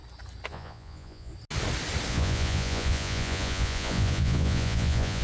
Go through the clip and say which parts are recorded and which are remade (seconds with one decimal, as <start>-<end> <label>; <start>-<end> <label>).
0.0-0.5 recorded; 0.5-1.3 remade; 1.3-2.1 recorded; 2.1-5.2 remade